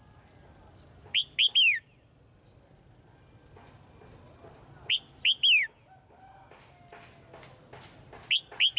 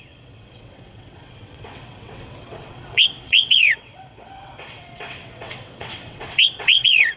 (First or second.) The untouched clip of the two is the first